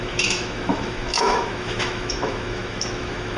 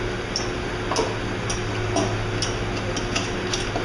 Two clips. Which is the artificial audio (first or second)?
first